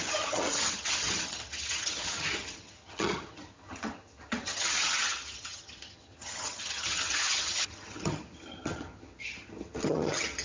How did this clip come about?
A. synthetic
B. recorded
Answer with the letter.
A